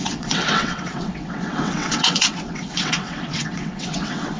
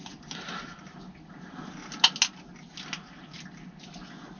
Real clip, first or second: second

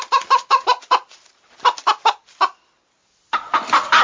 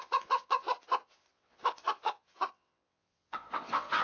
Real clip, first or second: first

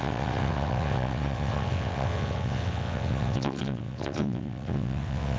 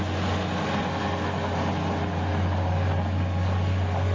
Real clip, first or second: second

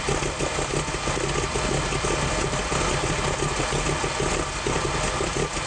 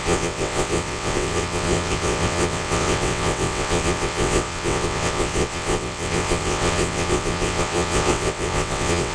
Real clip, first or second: first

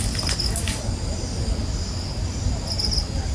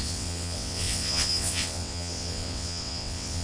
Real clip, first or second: first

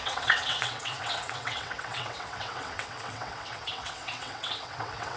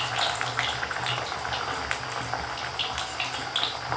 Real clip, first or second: second